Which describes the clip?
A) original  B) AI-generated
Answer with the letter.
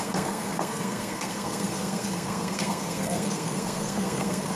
B